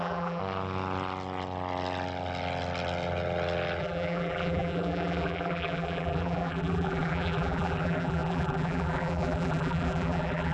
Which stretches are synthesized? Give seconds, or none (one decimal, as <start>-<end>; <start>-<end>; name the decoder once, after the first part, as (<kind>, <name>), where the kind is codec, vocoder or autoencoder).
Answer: 0.0-0.4 (vocoder, BigVGAN v2); 3.8-10.5